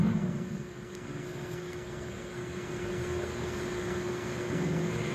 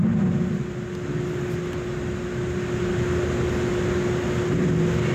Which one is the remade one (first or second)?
first